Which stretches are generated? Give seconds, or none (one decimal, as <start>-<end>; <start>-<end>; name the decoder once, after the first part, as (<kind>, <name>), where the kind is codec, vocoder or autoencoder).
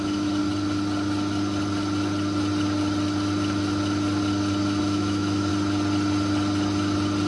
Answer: 0.0-0.4 (autoencoder, DAC-VAE); 4.8-5.5